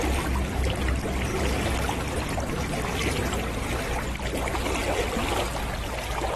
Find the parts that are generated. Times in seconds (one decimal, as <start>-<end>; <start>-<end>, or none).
none